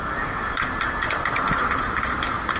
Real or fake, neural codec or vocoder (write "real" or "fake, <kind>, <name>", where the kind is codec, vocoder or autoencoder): real